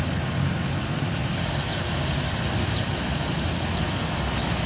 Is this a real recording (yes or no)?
yes